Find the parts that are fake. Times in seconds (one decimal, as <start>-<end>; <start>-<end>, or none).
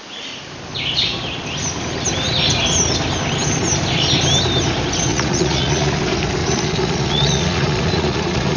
5.1-6.0; 6.4-8.6